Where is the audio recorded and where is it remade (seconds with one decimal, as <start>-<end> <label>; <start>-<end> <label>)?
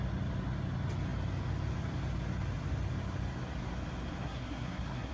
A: 0.0-4.1 recorded; 4.1-5.1 remade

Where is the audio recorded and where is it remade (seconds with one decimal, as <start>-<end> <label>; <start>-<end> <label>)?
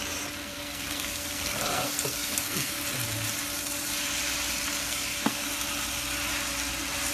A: 0.0-0.4 recorded; 0.4-2.8 remade; 2.8-4.8 recorded; 4.8-5.5 remade; 5.5-7.1 recorded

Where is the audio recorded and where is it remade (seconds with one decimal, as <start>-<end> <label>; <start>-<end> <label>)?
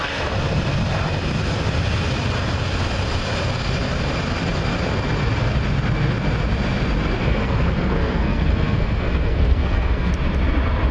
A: 0.0-7.2 recorded; 7.2-10.1 remade; 10.1-10.9 recorded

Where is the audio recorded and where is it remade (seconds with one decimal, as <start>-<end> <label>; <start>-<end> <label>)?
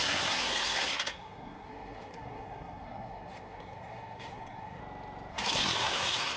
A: 0.0-4.8 remade; 4.8-5.3 recorded; 5.3-6.4 remade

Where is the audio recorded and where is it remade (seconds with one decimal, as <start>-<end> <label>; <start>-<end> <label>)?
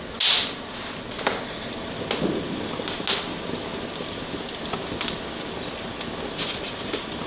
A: 0.0-7.3 recorded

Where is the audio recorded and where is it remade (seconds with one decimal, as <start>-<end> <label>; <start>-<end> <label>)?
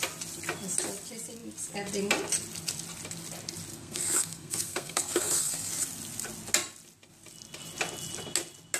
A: 0.0-3.7 recorded; 3.7-5.7 remade; 5.7-8.8 recorded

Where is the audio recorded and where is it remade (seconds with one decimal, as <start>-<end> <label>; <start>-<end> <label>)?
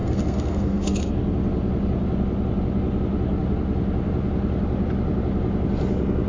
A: 0.0-1.1 remade; 1.1-6.3 recorded